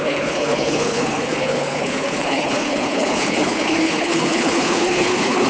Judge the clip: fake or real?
fake